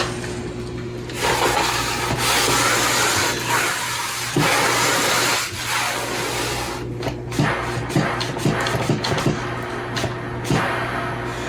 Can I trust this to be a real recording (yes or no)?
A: yes